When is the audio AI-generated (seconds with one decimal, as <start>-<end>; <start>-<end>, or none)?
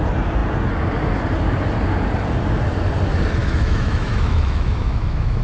3.4-5.4